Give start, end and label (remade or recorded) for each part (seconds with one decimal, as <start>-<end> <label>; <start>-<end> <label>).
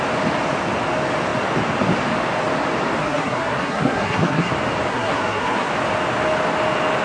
0.0-3.0 recorded; 3.0-4.5 remade; 4.5-4.9 recorded; 4.9-5.7 remade; 5.7-7.0 recorded